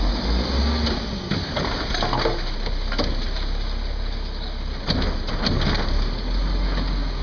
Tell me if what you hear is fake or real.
real